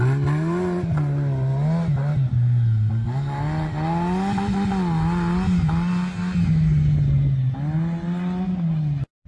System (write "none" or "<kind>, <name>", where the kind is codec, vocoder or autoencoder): none